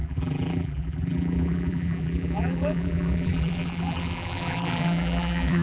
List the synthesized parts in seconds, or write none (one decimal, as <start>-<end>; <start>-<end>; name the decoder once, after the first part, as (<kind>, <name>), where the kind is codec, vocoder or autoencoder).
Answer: 0.0-5.6 (vocoder, BigVGAN v2)